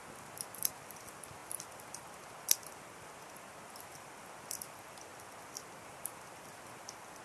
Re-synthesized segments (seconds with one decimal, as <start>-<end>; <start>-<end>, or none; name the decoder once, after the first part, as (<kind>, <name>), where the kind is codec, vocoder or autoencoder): none

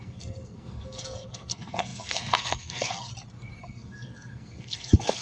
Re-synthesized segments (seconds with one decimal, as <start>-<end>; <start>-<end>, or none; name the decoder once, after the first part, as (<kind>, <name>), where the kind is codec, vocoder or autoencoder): 0.0-3.1 (codec, SNAC); 3.6-5.2

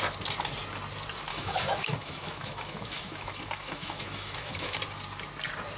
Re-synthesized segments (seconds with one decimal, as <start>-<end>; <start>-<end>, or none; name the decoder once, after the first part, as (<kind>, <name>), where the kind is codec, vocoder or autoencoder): 1.3-4.8 (autoencoder, DAC-VAE)